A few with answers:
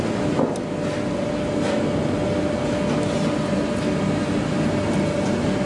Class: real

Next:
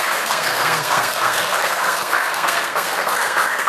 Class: fake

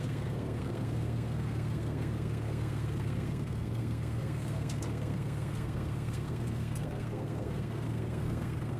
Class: fake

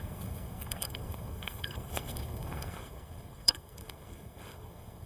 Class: fake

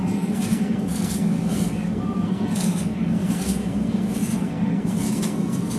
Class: fake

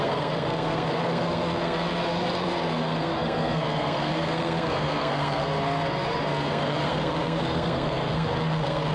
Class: fake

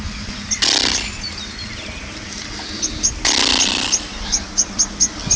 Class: real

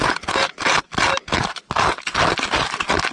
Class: real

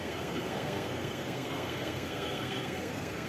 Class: fake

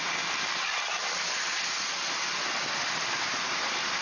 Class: real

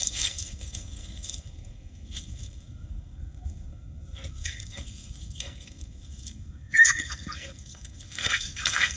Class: fake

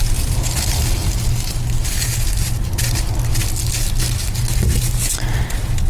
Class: real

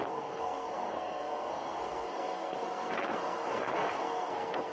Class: fake